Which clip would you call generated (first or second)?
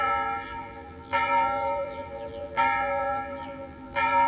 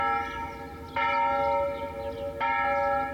first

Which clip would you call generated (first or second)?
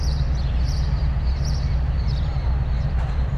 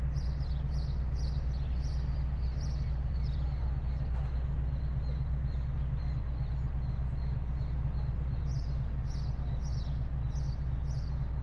first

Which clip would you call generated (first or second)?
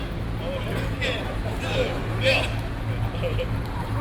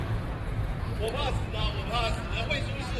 second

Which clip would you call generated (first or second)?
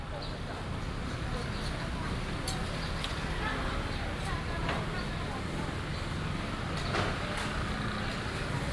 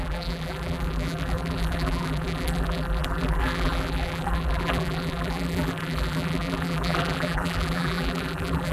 second